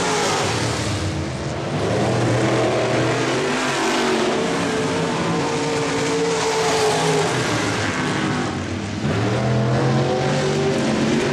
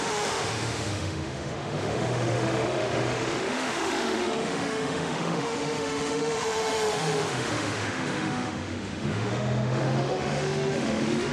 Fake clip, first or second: second